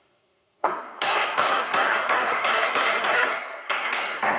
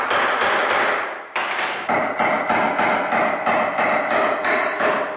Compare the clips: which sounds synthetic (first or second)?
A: first